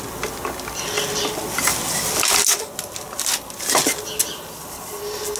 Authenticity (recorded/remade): recorded